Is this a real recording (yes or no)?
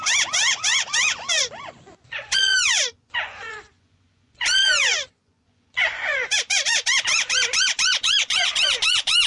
no